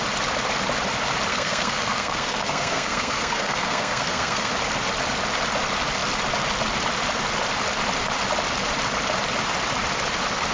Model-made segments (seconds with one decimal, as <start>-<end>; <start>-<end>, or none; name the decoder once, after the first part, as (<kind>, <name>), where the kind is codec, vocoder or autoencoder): 1.3-4.5 (codec, SNAC)

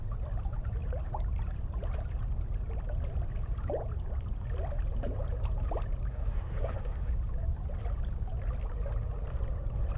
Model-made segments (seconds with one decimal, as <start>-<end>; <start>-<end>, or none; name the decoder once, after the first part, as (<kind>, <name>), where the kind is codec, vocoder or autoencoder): 6.1-7.1 (codec, SNAC)